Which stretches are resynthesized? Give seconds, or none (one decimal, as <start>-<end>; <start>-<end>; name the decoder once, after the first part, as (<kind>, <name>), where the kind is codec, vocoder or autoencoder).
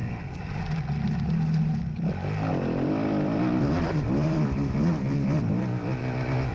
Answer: 0.0-0.6 (vocoder, BigVGAN v2); 2.5-6.0